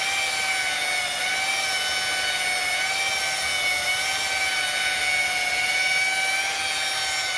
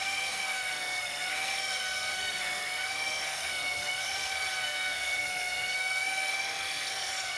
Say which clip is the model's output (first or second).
second